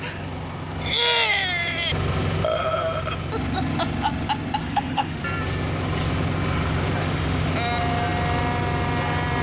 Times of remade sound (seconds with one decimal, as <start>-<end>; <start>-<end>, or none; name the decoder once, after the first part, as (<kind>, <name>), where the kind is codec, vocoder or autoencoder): 4.6-5.2 (autoencoder, DAC-VAE); 7.0-7.5